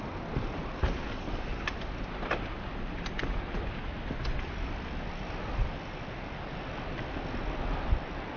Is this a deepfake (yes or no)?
no